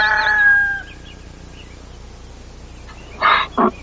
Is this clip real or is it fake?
real